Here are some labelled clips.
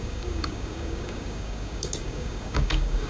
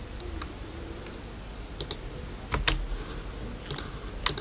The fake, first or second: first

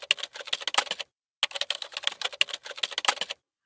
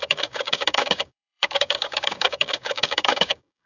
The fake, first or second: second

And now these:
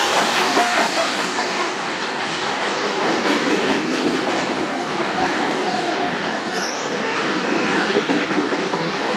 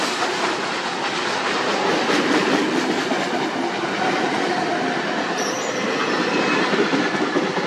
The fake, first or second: first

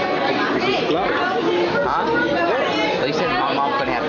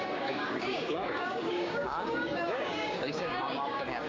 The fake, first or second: second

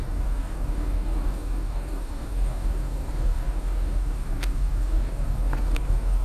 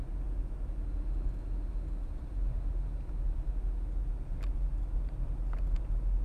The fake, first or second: first